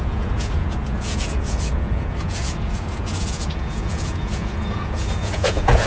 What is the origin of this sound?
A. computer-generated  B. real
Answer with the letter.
A